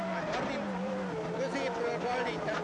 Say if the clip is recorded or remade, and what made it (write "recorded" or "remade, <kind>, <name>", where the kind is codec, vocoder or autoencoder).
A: recorded